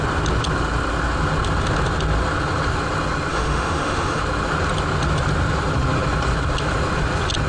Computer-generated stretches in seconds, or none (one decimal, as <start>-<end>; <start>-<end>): 3.3-4.2